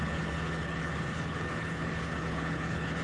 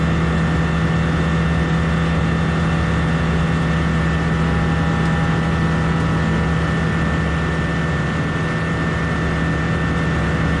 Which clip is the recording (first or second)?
second